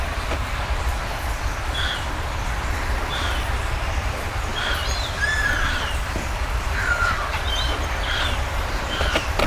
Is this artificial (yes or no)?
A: yes